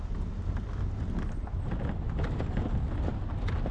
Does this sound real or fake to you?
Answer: real